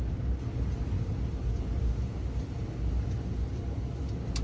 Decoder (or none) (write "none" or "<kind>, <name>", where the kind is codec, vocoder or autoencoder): none